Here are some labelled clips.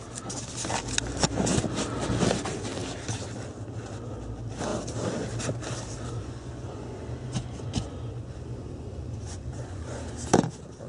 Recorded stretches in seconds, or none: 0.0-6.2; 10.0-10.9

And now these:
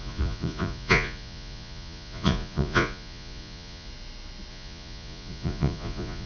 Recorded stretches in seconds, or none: 3.9-4.5

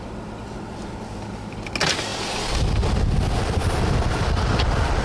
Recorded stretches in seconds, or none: 0.0-5.0

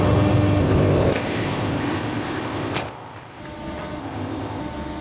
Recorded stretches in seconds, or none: 0.0-0.6; 3.4-4.0; 4.6-5.0